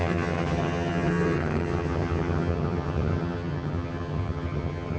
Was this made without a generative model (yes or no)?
no